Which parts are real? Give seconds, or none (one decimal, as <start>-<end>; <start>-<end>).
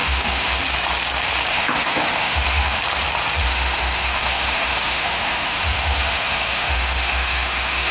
0.6-1.5; 2.8-3.4